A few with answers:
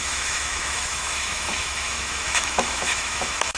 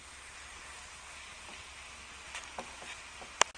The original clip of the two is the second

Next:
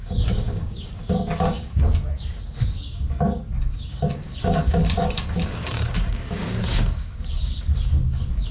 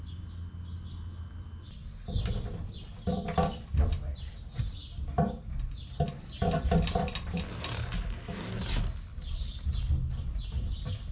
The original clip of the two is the second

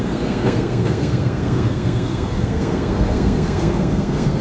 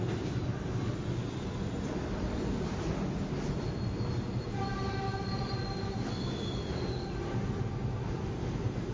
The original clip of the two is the second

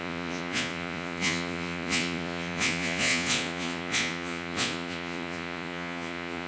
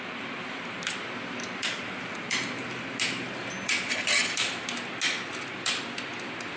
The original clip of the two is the second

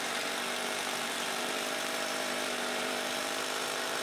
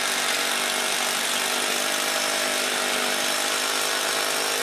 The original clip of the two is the second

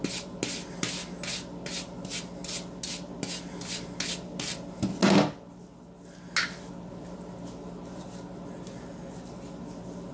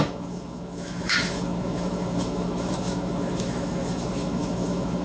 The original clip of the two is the first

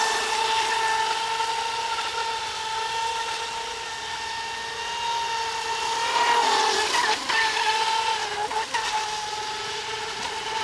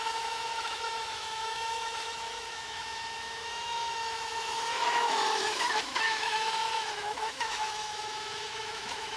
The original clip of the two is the first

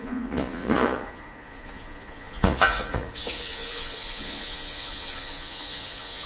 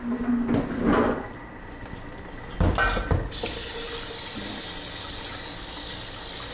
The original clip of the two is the second